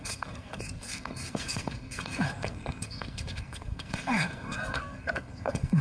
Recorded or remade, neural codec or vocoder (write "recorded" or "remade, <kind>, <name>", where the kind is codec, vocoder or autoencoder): remade, codec, SNAC